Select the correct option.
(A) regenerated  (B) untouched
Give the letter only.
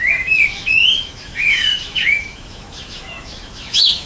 A